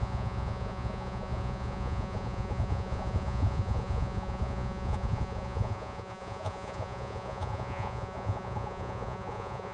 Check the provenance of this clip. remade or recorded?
remade